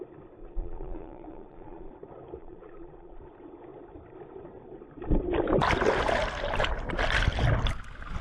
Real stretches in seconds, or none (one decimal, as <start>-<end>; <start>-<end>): 0.0-0.4; 1.9-2.4; 3.2-8.2